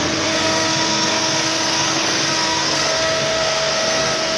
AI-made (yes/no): yes